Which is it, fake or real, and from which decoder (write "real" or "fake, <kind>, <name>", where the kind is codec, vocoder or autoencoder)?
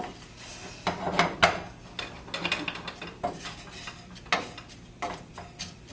real